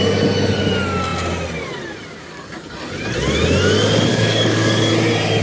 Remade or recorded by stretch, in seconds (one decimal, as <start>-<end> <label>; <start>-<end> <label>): 0.0-4.1 recorded; 4.1-4.9 remade; 4.9-5.4 recorded